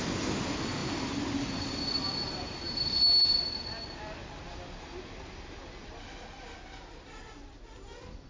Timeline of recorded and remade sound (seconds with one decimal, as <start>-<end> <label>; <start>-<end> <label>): 0.0-8.3 recorded